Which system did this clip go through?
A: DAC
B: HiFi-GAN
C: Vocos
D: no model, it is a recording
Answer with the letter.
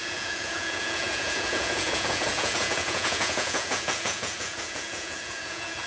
C